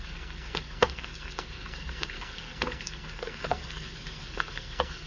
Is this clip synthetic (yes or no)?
yes